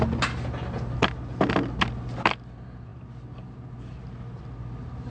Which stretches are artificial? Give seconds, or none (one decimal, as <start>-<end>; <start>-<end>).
none

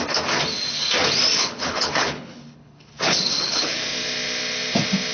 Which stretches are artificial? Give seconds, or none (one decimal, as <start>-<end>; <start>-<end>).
1.4-3.8

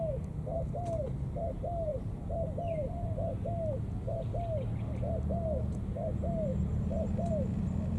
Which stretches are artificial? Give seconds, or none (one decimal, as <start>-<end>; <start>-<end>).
1.9-2.6; 6.5-7.3

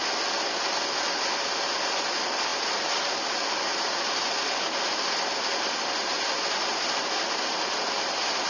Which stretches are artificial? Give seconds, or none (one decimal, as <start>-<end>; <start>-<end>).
none

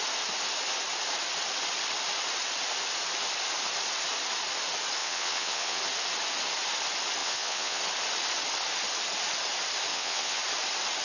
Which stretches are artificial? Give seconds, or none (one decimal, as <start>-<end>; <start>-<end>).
5.0-5.8; 7.2-7.8; 9.9-10.4

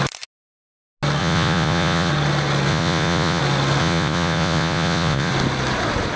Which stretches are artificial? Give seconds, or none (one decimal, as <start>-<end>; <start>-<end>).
1.2-2.1; 2.7-3.4; 3.8-5.3